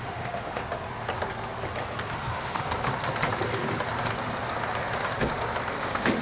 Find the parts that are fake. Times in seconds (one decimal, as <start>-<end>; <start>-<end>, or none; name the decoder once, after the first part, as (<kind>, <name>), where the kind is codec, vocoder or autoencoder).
0.0-0.6 (autoencoder, DAC-VAE); 2.1-2.6; 5.7-6.2